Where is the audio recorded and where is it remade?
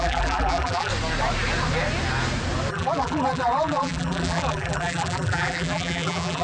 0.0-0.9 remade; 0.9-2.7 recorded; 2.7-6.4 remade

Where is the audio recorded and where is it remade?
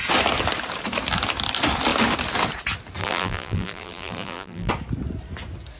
0.0-3.0 recorded; 3.0-4.7 remade; 4.7-5.8 recorded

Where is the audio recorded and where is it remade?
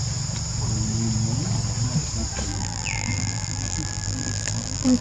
0.0-2.5 recorded; 2.5-5.0 remade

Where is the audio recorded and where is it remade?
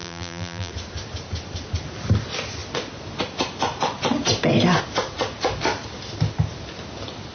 0.0-0.7 remade; 0.7-7.3 recorded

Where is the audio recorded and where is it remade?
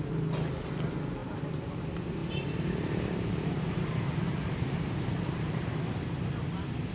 0.0-1.2 recorded; 1.2-1.8 remade; 1.8-2.2 recorded; 2.2-6.2 remade; 6.2-6.9 recorded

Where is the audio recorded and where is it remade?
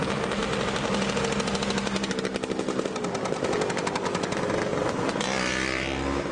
0.0-6.3 recorded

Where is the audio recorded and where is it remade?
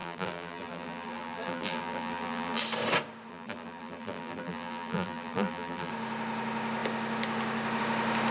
0.0-2.6 remade; 2.6-3.3 recorded; 3.3-5.9 remade; 5.9-8.3 recorded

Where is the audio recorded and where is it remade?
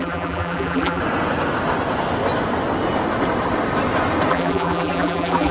0.0-1.0 remade; 1.0-4.3 recorded; 4.3-5.5 remade